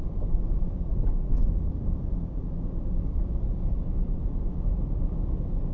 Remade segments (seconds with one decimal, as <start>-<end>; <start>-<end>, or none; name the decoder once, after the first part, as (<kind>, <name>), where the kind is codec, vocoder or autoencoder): none